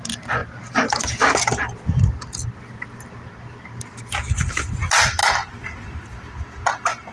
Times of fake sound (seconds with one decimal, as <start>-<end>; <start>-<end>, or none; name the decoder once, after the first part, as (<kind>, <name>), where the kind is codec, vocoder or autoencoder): 5.2-6.0 (vocoder, BigVGAN v2)

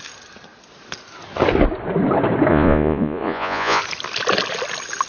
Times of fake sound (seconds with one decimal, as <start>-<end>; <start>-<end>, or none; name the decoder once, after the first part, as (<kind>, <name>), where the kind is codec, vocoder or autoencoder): 2.5-3.8 (vocoder, Vocos)

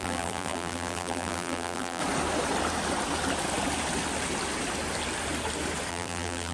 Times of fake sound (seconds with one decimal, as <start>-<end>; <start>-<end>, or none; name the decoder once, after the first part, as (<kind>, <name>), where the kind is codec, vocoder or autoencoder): 0.0-2.0 (vocoder, BigVGAN v2); 5.9-6.5